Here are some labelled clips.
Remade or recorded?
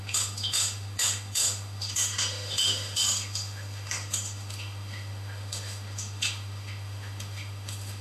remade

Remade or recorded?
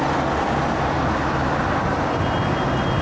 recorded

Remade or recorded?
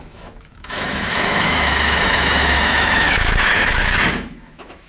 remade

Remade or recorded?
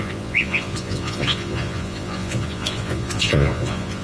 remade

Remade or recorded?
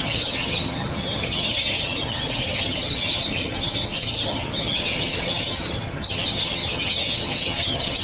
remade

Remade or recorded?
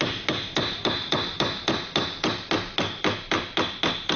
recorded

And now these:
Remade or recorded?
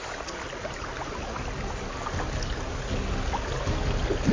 recorded